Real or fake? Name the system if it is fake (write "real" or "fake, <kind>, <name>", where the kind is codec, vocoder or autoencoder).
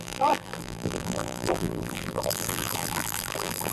fake, vocoder, BigVGAN v2